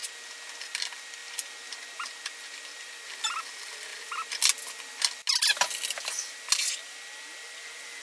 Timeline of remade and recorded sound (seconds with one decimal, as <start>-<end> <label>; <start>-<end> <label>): 0.0-8.0 recorded